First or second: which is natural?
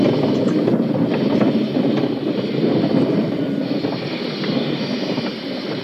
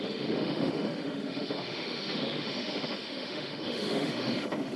first